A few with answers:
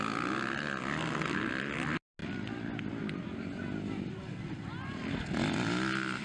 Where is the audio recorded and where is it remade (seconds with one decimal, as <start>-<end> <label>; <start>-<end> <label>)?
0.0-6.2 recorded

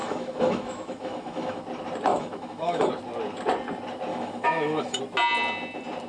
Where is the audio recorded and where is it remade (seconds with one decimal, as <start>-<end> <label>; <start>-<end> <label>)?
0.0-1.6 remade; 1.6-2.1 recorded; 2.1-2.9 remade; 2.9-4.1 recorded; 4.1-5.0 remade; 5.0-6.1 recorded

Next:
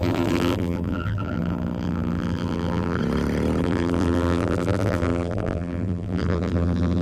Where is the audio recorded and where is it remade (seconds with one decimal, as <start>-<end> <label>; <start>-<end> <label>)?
0.0-3.0 remade; 3.0-3.6 recorded; 3.6-7.0 remade

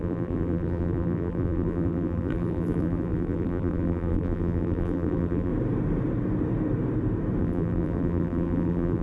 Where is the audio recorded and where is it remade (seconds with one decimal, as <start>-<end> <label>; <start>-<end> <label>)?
0.0-5.5 remade; 5.5-7.4 recorded; 7.4-9.0 remade